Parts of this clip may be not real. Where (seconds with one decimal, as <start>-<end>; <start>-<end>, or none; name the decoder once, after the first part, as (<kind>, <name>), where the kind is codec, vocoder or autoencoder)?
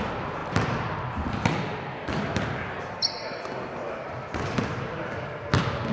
0.4-3.9 (vocoder, BigVGAN v2)